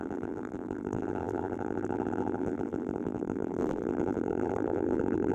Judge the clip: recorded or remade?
remade